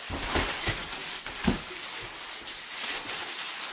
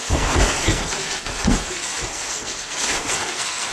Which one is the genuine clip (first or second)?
first